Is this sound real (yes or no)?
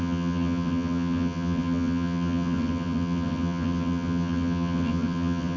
no